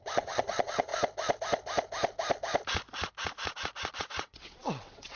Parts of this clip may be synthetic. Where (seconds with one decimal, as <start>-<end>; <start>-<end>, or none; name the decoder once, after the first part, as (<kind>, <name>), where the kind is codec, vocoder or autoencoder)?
0.0-0.9 (vocoder, WaveNeXt); 4.0-5.2